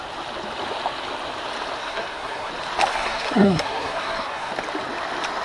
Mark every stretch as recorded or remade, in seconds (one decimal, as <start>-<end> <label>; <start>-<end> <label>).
0.0-1.8 recorded; 1.8-2.5 remade; 2.5-2.9 recorded; 2.9-4.5 remade; 4.5-5.4 recorded